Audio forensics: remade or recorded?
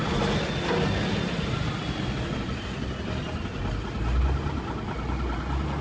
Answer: recorded